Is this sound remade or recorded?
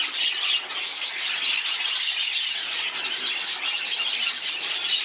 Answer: recorded